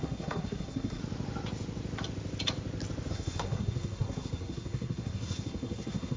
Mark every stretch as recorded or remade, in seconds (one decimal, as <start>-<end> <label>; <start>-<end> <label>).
0.0-1.0 remade; 1.0-3.1 recorded; 3.1-6.2 remade